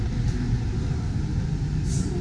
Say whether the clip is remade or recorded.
recorded